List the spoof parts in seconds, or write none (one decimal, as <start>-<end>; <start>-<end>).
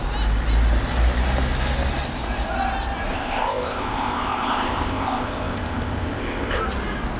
3.1-6.6